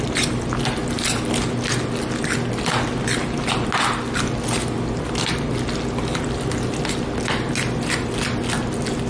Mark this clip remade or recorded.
recorded